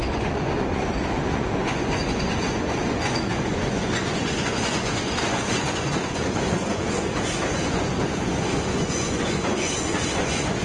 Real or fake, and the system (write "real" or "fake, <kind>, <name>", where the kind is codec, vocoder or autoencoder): fake, vocoder, Vocos